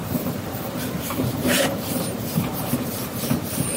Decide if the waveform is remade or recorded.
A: remade